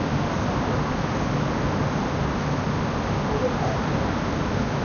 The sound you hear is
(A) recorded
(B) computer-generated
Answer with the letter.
A